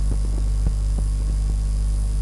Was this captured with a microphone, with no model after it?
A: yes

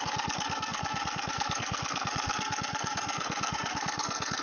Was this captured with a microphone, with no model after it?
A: no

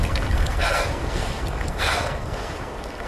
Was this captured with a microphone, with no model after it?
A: no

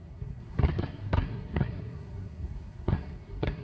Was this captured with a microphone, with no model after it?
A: no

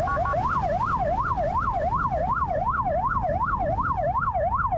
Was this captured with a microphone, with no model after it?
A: yes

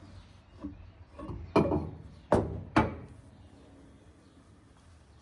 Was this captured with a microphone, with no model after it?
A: yes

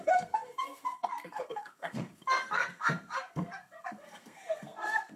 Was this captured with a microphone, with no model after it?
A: no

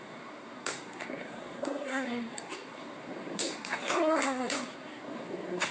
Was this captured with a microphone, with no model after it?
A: no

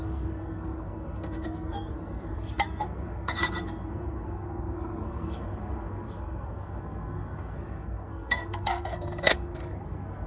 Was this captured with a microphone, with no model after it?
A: no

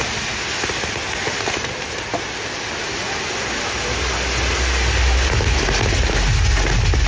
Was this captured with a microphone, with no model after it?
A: yes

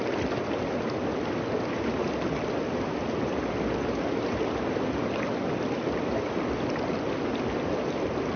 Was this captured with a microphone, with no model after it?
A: yes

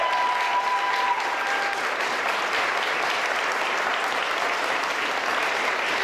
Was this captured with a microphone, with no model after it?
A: yes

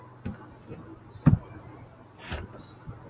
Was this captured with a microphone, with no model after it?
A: yes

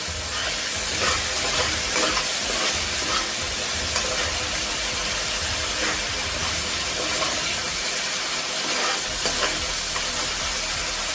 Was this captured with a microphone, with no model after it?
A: yes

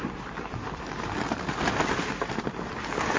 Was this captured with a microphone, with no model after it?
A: yes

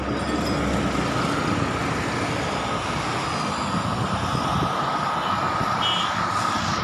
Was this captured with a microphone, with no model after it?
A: yes